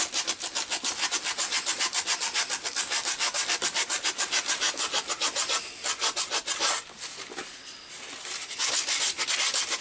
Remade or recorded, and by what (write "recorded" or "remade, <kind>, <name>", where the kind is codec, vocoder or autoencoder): recorded